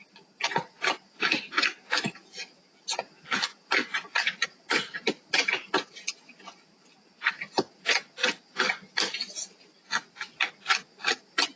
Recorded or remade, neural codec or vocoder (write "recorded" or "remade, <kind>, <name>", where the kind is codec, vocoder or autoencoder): recorded